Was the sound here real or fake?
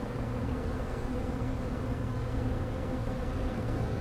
fake